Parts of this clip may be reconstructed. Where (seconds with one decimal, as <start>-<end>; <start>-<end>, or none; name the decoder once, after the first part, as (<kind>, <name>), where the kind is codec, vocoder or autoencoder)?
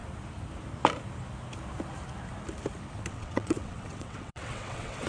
3.1-5.1 (vocoder, WaveNeXt)